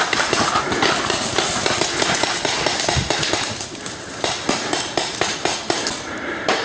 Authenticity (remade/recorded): recorded